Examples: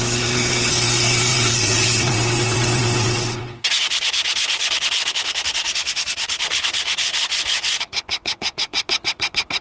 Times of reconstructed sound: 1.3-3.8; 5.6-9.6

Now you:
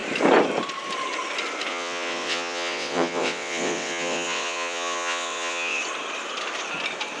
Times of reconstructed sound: 1.7-5.8